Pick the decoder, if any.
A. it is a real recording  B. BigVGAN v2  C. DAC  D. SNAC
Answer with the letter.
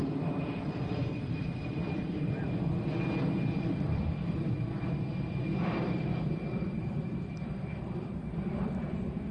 B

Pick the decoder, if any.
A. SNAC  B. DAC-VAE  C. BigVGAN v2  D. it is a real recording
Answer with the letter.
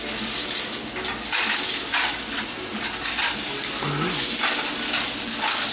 D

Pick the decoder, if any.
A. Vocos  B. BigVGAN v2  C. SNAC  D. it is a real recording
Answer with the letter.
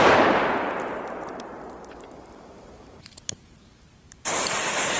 B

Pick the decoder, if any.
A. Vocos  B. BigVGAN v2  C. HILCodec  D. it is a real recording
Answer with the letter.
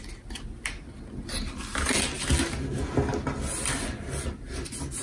D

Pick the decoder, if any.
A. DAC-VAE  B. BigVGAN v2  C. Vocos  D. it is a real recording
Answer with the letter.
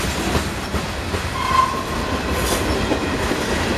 D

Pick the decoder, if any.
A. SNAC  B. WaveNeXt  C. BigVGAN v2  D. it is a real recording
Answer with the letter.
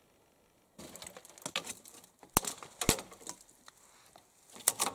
D